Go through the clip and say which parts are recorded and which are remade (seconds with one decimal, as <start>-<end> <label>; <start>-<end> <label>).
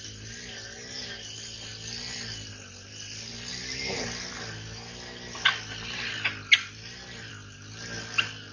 0.0-8.5 recorded